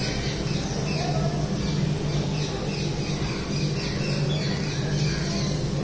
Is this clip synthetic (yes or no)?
no